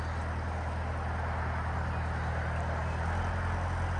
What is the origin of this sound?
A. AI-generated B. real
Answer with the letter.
B